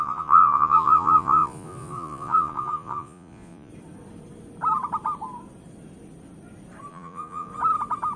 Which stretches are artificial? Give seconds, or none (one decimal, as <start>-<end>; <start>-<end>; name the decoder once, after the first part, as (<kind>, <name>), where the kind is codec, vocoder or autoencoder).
0.0-3.7 (vocoder, Vocos); 6.9-7.5